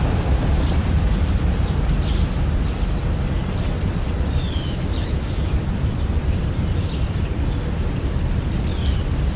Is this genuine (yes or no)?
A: no